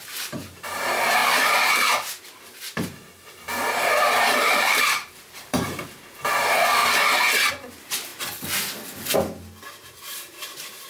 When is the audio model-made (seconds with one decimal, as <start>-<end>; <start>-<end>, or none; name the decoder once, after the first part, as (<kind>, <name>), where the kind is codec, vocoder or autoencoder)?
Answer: 0.0-1.2 (vocoder, BigVGAN v2); 2.2-6.8; 7.5-8.1; 9.7-10.9